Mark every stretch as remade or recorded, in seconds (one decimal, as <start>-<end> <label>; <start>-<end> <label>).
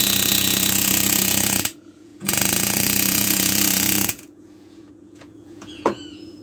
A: 0.0-6.4 remade